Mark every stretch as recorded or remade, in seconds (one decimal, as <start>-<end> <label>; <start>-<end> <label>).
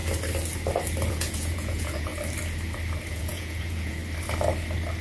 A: 0.0-1.1 recorded; 1.1-2.1 remade; 2.1-3.1 recorded; 3.1-4.0 remade; 4.0-5.0 recorded